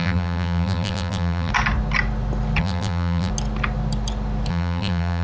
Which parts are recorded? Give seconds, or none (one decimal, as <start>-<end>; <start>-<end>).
1.5-2.6; 3.3-4.5